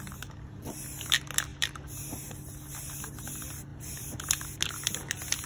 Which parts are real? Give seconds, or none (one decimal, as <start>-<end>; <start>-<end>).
0.0-1.5; 2.0-3.7; 4.2-5.5